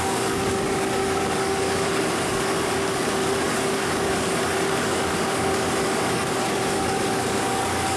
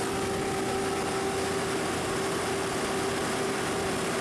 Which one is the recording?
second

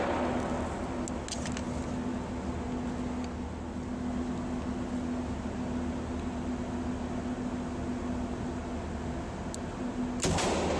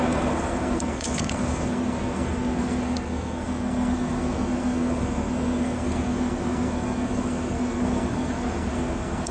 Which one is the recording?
first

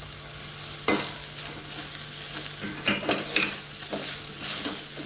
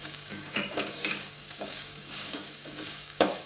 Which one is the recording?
first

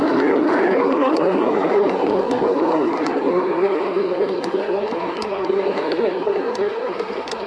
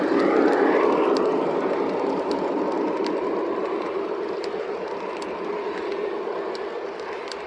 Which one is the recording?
second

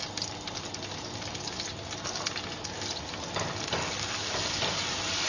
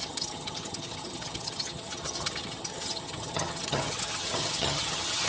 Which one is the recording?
first